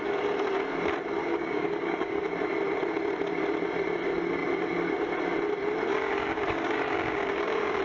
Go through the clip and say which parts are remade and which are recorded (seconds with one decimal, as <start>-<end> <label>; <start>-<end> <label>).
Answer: 0.0-1.2 recorded; 1.2-2.2 remade; 2.2-5.9 recorded; 5.9-7.8 remade